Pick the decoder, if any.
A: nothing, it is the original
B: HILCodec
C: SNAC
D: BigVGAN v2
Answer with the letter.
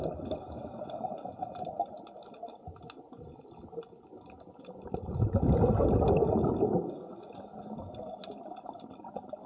A